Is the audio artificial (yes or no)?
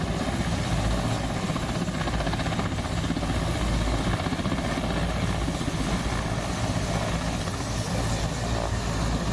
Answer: no